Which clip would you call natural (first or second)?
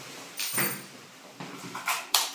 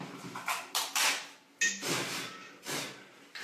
second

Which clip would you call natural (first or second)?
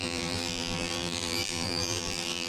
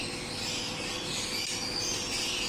second